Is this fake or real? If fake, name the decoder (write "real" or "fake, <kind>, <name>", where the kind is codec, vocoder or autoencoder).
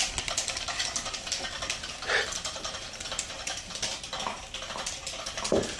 real